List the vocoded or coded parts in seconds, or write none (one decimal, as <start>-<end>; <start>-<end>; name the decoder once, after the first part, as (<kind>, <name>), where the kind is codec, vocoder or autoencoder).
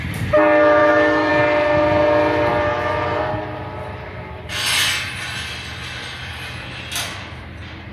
0.8-1.3 (autoencoder, DAC-VAE)